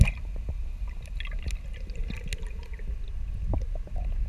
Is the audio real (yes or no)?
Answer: yes